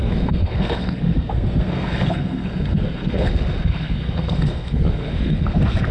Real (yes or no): no